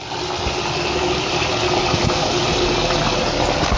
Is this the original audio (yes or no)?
yes